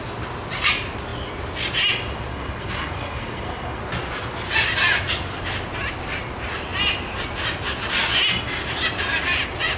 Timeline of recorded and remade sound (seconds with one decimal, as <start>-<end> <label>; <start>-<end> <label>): 0.0-2.3 recorded; 2.3-3.8 remade; 3.8-9.8 recorded